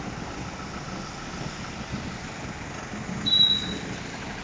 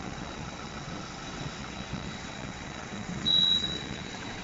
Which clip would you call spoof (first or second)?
second